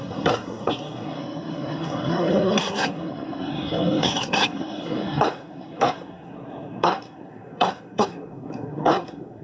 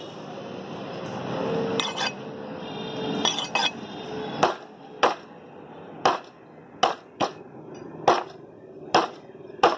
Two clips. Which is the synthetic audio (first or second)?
first